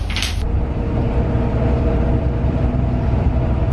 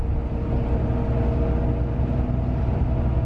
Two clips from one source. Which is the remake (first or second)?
first